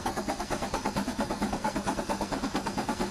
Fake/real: fake